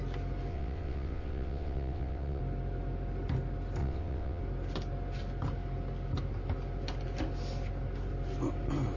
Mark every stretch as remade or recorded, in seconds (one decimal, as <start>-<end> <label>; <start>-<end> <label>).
0.0-0.5 recorded; 0.5-2.4 remade; 2.4-3.8 recorded; 3.8-4.4 remade; 4.4-9.0 recorded

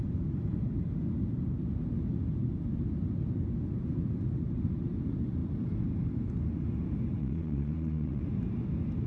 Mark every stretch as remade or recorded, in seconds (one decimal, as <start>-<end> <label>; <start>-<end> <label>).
0.0-7.2 recorded; 7.2-8.2 remade; 8.2-9.1 recorded

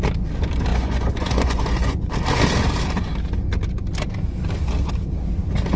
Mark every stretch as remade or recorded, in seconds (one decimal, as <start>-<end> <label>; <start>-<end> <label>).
0.0-0.7 recorded; 0.7-2.1 remade; 2.1-5.8 recorded